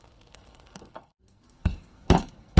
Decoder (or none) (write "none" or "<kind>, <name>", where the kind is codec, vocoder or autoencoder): codec, SNAC